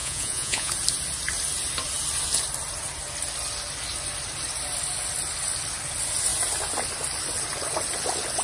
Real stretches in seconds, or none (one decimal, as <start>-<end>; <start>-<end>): 0.7-8.4